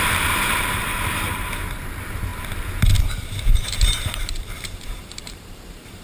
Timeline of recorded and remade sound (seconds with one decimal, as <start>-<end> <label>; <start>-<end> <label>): 0.0-2.3 remade; 2.3-3.0 recorded; 3.0-6.0 remade

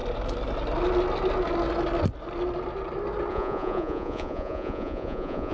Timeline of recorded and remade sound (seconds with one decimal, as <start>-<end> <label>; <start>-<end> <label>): 0.0-3.3 recorded; 3.3-5.5 remade

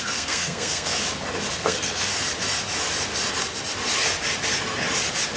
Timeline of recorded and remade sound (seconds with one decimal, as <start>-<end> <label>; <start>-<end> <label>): 0.0-0.9 remade; 0.9-1.5 recorded; 1.5-2.1 remade; 2.1-5.4 recorded

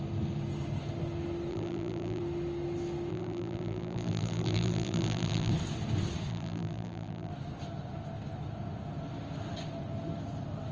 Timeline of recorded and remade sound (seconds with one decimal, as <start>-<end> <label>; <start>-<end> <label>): 0.0-1.5 recorded; 1.5-2.2 remade; 2.2-3.1 recorded; 3.1-5.5 remade; 5.5-6.3 recorded; 6.3-7.3 remade; 7.3-10.7 recorded

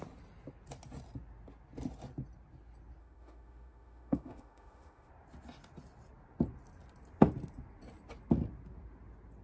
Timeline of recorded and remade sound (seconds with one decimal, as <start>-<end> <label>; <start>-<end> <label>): 0.0-3.0 recorded; 3.0-5.1 remade; 5.1-9.4 recorded